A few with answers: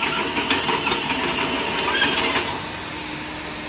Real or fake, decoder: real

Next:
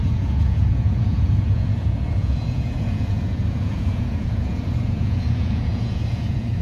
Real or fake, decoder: fake, vocoder, Vocos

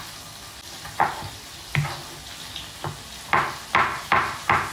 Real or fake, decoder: real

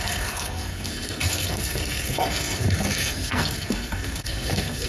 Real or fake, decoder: fake, codec, SNAC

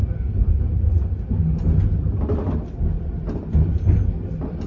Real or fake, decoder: real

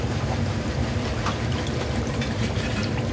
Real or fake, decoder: fake, vocoder, BigVGAN v2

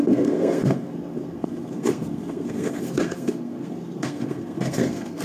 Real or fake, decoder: fake, codec, SNAC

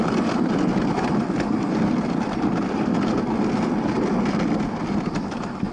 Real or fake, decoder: real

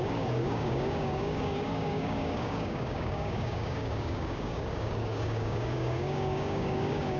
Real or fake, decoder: fake, codec, DAC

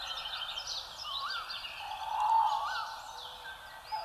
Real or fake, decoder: real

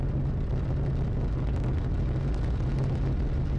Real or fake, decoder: real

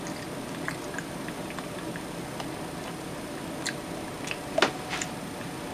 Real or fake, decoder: real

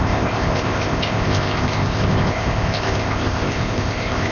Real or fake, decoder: fake, codec, ZipCodec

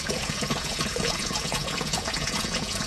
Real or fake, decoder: fake, vocoder, Vocos